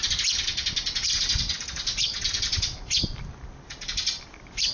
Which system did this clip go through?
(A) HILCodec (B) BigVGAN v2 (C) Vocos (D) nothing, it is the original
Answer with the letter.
B